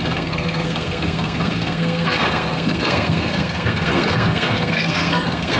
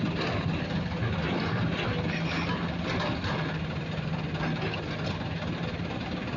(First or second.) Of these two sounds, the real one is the second